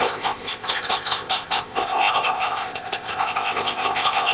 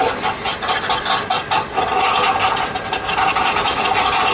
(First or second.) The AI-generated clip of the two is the first